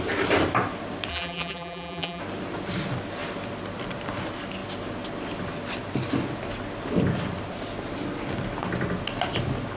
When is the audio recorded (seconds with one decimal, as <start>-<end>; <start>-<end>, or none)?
0.0-1.1; 2.2-9.8